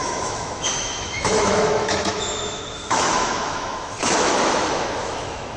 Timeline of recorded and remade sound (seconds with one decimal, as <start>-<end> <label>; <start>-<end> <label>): 0.0-5.6 remade

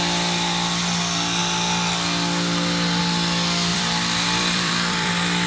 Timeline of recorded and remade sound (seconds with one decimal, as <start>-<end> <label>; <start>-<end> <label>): 0.0-3.7 recorded; 3.7-5.1 remade; 5.1-5.5 recorded